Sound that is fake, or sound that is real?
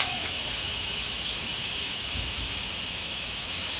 fake